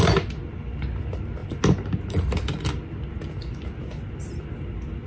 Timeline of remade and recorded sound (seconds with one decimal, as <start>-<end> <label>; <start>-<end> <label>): 0.0-5.1 recorded